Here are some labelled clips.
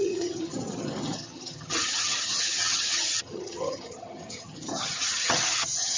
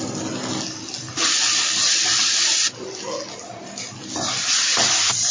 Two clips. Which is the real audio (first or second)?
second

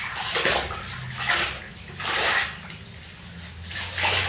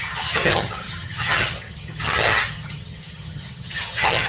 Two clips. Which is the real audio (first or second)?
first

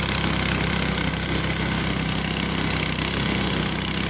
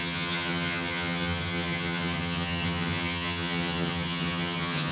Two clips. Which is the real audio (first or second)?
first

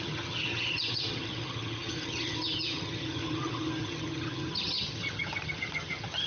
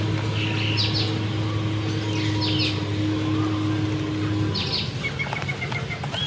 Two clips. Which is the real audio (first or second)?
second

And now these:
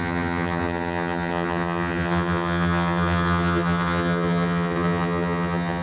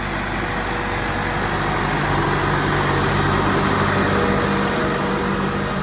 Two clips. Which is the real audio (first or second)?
second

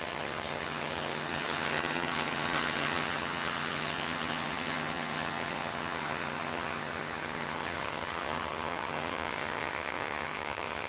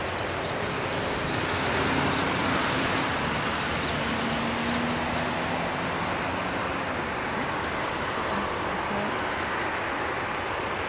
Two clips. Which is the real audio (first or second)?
second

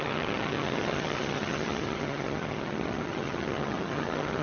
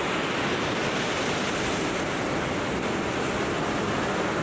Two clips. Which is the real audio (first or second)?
second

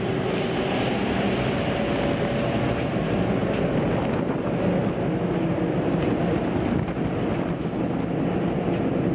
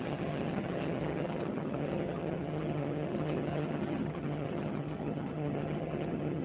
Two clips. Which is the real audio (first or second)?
first